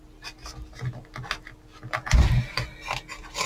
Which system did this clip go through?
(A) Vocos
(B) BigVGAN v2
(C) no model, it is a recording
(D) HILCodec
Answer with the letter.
C